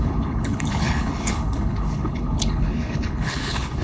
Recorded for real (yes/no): no